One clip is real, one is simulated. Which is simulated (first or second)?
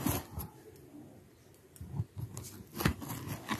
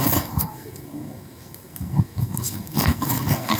second